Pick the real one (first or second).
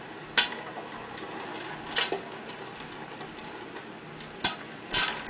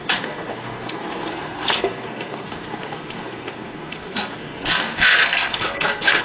first